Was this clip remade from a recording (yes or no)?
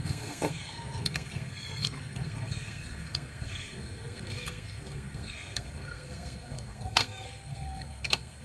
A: yes